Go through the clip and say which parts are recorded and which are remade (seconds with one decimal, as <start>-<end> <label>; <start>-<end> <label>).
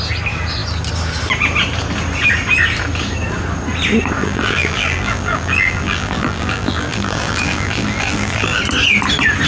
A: 0.0-4.2 recorded; 4.2-8.6 remade; 8.6-9.5 recorded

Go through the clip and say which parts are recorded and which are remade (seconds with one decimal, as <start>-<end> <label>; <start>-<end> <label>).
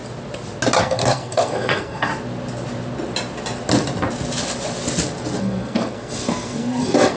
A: 0.0-0.8 recorded; 0.8-2.1 remade; 2.1-5.4 recorded; 5.4-7.2 remade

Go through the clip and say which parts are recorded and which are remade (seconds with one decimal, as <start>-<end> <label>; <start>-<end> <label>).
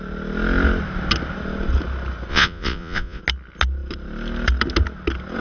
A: 0.0-2.3 recorded; 2.3-3.2 remade; 3.2-5.4 recorded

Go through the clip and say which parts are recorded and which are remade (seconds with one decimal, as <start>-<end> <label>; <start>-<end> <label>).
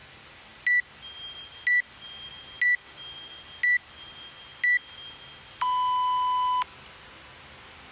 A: 0.0-7.9 recorded